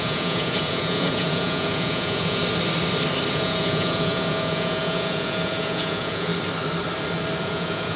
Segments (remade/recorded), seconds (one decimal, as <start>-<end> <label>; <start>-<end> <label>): 0.0-2.4 remade; 2.4-3.3 recorded; 3.3-6.3 remade; 6.3-7.4 recorded; 7.4-8.0 remade